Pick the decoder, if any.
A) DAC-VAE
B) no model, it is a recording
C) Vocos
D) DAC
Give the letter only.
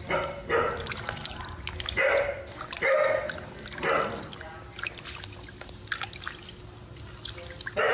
B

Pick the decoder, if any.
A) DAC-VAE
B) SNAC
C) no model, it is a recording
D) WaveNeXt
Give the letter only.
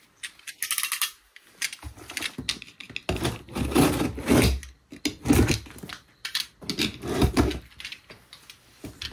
C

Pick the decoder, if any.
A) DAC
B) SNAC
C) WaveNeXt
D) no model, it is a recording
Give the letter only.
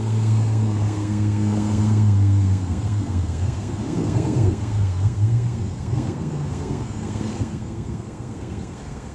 B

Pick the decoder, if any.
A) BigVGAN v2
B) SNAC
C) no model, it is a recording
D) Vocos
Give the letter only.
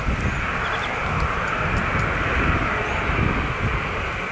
C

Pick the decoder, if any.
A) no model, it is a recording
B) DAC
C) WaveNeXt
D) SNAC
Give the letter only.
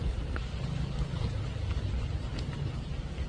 A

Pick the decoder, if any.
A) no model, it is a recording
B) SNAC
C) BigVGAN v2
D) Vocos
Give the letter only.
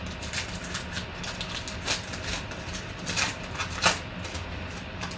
A